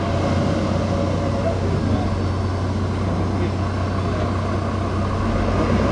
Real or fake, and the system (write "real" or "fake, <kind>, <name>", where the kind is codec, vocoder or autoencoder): real